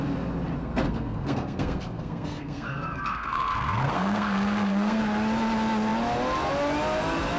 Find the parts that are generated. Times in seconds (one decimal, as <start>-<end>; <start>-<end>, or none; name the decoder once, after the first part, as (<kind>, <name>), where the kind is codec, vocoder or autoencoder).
0.6-5.0 (codec, SNAC)